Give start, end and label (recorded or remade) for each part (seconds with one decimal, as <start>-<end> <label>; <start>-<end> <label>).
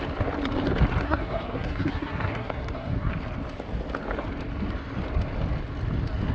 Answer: 0.0-1.0 recorded; 1.0-3.1 remade; 3.1-6.3 recorded